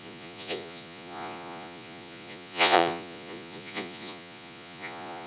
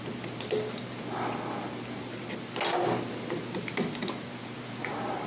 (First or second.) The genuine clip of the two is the second